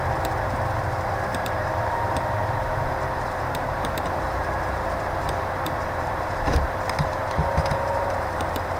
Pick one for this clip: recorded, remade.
remade